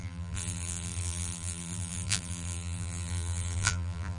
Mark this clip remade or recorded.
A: remade